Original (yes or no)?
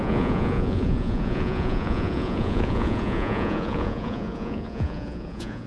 no